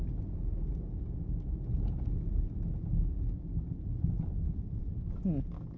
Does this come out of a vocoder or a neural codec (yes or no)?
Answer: no